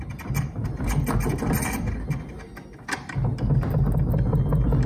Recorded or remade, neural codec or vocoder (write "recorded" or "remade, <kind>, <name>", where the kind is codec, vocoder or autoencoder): recorded